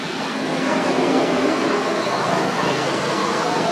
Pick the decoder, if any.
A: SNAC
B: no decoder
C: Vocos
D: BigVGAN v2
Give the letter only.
A